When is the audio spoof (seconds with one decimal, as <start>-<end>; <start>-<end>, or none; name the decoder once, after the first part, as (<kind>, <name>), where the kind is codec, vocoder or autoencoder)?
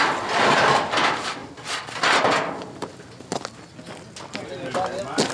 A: none